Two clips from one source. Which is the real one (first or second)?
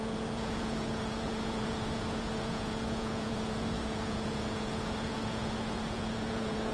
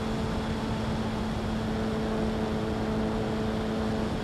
second